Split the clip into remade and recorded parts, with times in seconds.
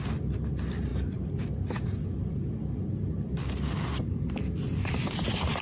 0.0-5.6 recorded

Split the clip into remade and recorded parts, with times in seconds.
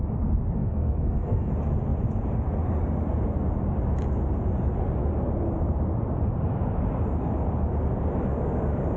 0.0-0.6 recorded; 0.6-1.5 remade; 1.5-9.0 recorded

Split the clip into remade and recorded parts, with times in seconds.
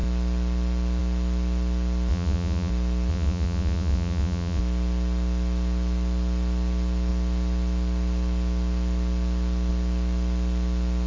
0.0-2.1 recorded; 2.1-2.7 remade; 2.7-3.1 recorded; 3.1-4.6 remade; 4.6-11.1 recorded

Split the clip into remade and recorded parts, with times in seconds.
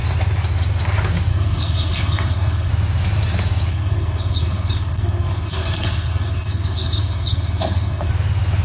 0.0-1.3 recorded; 1.3-2.7 remade; 2.7-3.7 recorded; 3.7-8.1 remade; 8.1-8.6 recorded